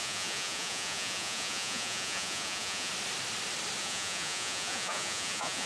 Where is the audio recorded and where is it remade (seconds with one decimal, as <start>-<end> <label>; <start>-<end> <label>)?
0.0-2.9 remade; 2.9-3.8 recorded; 3.8-5.7 remade